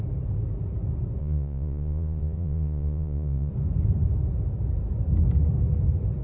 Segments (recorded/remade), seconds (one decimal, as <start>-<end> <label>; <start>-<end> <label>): 0.0-1.2 recorded; 1.2-3.5 remade; 3.5-6.2 recorded